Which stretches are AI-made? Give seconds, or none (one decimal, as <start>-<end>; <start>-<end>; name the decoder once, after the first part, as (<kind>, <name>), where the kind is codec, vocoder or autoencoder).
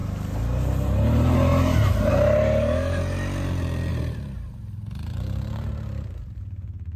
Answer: 3.9-7.0 (vocoder, BigVGAN v2)